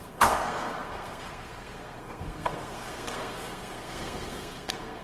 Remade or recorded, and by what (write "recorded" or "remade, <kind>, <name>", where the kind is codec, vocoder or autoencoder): remade, codec, SNAC